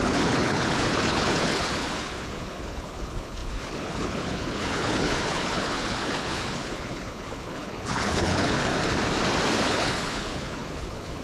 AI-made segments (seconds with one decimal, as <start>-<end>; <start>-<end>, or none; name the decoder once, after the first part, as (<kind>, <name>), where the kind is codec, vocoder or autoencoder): 0.0-8.7 (codec, HILCodec); 9.6-11.2